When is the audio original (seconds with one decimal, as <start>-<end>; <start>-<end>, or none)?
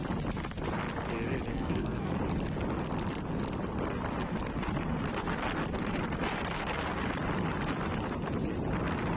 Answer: 0.0-1.5; 2.1-9.2